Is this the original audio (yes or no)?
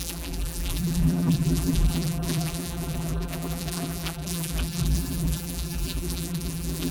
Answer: no